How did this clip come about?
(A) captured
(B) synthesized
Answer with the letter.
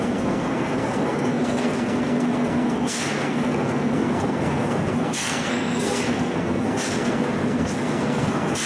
B